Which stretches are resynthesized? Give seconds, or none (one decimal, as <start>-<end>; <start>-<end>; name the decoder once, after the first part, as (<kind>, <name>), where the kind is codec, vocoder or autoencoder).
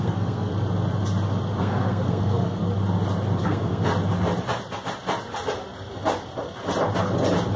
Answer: 0.0-0.5 (codec, SNAC); 1.6-2.6; 3.4-3.9